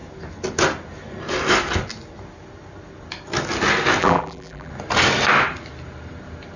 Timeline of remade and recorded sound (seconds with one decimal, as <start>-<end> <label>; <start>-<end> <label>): 0.0-4.0 recorded; 4.0-4.7 remade; 4.7-6.6 recorded